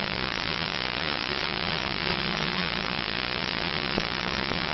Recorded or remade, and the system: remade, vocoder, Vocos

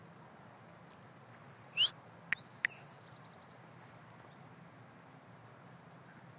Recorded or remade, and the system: recorded